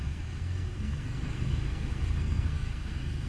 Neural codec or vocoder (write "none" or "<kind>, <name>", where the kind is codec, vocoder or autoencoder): codec, SNAC